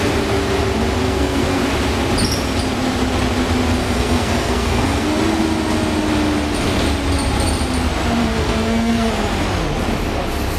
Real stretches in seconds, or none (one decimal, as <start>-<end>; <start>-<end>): 0.0-1.0; 1.6-3.8; 5.2-8.2; 9.1-10.6